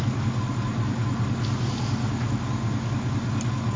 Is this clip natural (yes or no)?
yes